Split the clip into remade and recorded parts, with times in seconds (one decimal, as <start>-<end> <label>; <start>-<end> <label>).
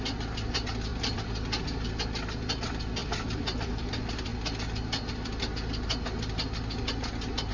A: 0.0-0.9 recorded; 0.9-1.9 remade; 1.9-3.0 recorded; 3.0-3.9 remade; 3.9-7.5 recorded